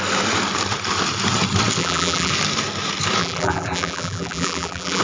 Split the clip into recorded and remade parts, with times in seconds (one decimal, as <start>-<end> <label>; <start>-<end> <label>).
0.0-1.8 recorded; 1.8-2.3 remade; 2.3-3.2 recorded; 3.2-5.0 remade